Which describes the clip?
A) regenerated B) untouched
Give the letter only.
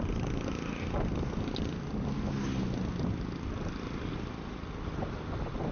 B